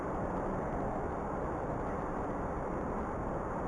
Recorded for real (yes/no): yes